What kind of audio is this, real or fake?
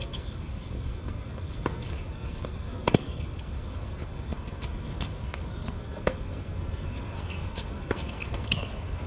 fake